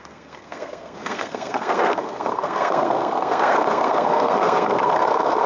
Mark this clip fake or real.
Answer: fake